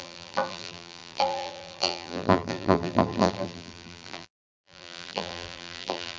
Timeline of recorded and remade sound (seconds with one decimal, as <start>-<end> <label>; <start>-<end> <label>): 0.0-6.2 remade